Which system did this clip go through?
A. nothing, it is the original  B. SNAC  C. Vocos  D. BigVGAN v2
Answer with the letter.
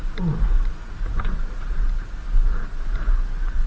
A